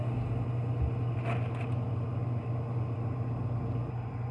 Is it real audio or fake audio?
real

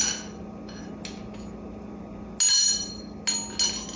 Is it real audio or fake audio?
real